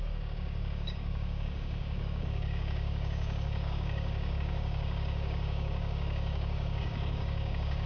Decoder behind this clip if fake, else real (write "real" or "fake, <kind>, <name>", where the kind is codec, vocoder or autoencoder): fake, codec, DAC